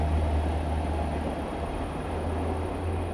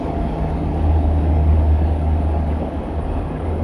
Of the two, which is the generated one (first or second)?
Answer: second